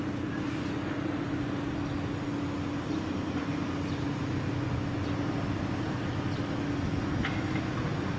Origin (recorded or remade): recorded